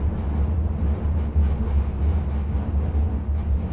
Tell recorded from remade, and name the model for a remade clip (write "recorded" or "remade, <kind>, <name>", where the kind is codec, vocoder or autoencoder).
recorded